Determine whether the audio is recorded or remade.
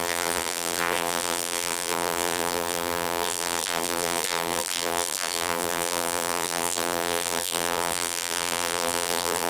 remade